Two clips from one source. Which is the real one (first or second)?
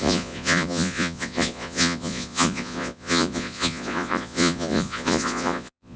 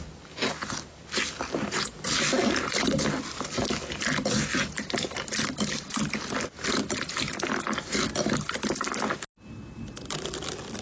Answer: second